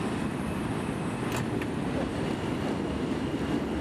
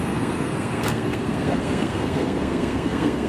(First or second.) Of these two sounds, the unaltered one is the first